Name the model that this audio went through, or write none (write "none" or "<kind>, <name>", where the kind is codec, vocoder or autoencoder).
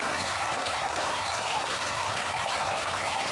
codec, SNAC